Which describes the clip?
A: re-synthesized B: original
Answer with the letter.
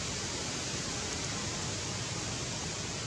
B